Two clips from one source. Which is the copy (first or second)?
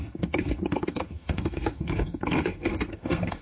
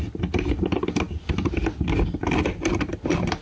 first